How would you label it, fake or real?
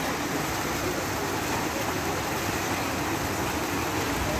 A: real